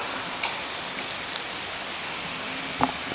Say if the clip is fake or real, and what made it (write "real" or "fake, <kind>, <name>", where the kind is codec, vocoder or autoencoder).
real